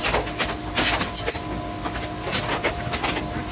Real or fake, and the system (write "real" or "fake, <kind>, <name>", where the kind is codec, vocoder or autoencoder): real